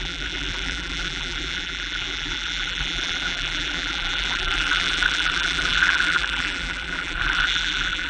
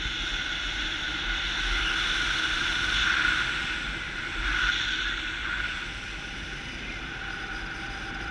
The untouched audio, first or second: second